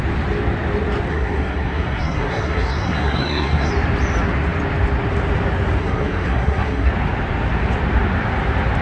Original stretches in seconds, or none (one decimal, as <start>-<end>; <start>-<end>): 0.0-1.1; 3.7-5.8; 6.9-8.8